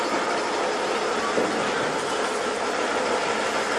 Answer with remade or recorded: recorded